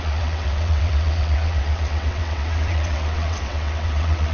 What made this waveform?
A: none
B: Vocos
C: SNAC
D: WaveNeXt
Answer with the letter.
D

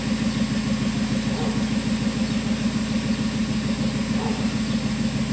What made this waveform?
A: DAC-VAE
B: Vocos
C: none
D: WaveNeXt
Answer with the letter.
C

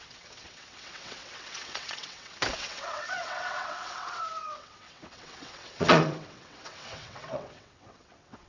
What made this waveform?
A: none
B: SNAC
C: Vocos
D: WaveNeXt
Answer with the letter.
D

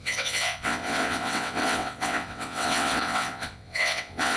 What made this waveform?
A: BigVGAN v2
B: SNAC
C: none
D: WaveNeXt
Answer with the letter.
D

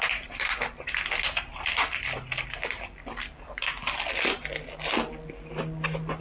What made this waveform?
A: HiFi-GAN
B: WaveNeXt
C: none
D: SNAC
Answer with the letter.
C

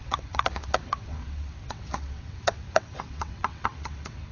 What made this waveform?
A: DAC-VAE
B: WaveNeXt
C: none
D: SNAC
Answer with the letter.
B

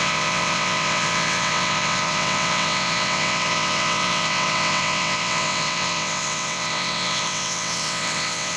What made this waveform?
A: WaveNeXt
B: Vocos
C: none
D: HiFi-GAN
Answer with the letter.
A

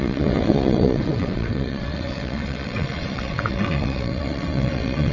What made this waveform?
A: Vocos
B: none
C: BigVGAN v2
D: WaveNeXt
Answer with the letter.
D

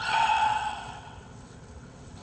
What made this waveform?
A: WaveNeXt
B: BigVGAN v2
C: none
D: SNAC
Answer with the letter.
A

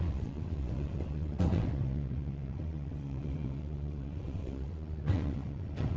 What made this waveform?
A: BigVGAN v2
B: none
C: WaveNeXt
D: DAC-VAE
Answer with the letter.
C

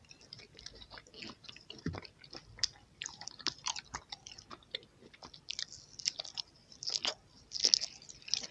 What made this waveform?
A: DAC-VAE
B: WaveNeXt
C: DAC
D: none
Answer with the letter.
D